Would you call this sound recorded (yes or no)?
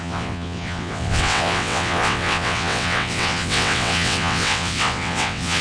no